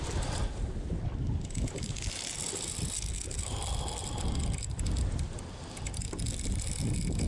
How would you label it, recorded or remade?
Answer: recorded